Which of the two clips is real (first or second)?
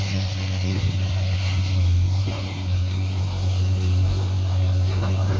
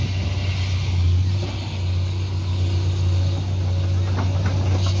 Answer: second